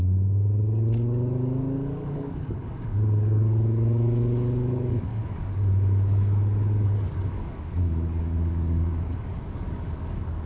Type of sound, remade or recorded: remade